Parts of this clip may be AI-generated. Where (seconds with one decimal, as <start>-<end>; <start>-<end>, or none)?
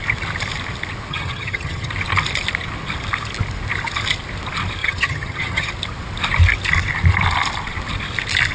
1.1-1.9; 4.8-5.7